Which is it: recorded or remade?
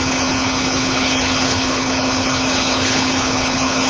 remade